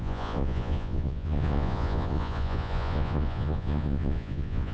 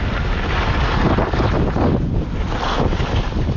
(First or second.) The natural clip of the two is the second